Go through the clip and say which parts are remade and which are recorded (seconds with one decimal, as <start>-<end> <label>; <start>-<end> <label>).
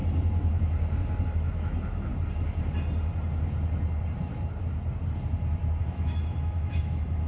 0.0-1.2 recorded; 1.2-2.1 remade; 2.1-5.8 recorded; 5.8-7.3 remade